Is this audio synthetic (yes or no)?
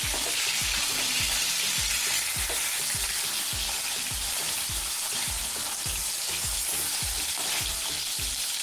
no